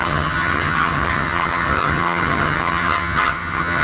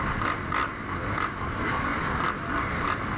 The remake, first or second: first